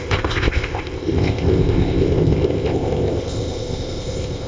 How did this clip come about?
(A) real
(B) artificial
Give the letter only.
B